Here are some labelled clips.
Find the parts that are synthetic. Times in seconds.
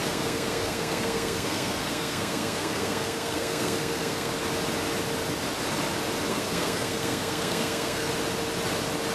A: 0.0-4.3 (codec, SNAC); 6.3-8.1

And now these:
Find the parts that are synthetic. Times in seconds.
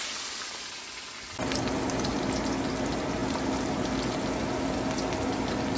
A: none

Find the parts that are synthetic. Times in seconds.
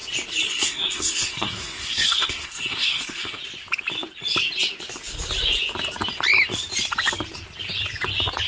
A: 0.5-3.4 (codec, SNAC)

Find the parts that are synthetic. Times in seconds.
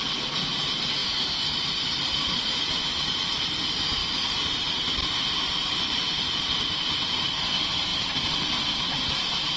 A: none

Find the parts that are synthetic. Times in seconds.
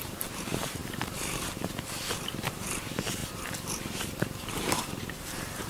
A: 0.0-5.7 (vocoder, BigVGAN v2)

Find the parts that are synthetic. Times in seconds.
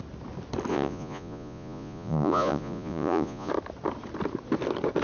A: 0.7-3.5 (vocoder, Vocos)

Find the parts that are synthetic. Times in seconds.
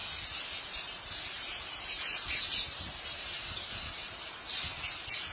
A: 0.6-5.3 (vocoder, BigVGAN v2)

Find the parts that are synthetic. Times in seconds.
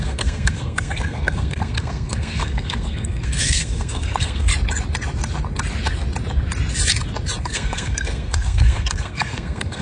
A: 0.0-4.5 (codec, SNAC); 7.4-9.8